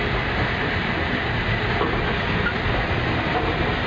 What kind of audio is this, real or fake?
real